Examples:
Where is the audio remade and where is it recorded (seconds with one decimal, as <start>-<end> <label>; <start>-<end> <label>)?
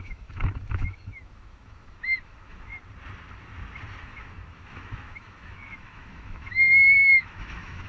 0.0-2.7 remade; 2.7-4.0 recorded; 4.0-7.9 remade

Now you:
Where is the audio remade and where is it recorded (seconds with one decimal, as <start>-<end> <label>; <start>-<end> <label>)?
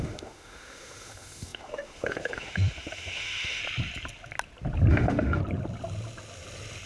0.0-3.6 remade; 3.6-4.9 recorded; 4.9-5.4 remade; 5.4-6.9 recorded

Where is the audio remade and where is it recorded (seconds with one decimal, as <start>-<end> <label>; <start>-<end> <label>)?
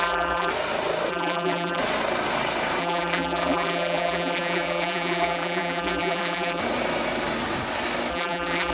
0.0-0.5 remade; 0.5-1.1 recorded; 1.1-1.8 remade; 1.8-2.8 recorded; 2.8-6.6 remade; 6.6-8.1 recorded; 8.1-8.7 remade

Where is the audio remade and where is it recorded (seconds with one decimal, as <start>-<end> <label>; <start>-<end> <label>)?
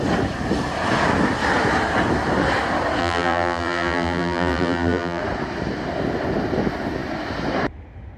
0.0-3.0 recorded; 3.0-5.2 remade; 5.2-8.2 recorded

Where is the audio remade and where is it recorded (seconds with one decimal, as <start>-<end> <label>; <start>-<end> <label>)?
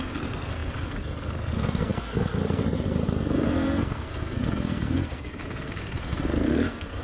0.0-7.0 remade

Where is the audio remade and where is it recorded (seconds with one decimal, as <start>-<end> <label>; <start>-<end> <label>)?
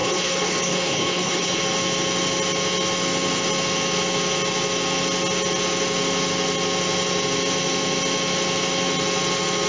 0.0-1.6 remade; 1.6-9.7 recorded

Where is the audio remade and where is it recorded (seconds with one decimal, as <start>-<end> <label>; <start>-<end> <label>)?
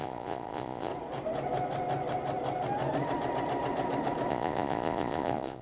0.0-0.9 remade; 0.9-4.3 recorded; 4.3-5.6 remade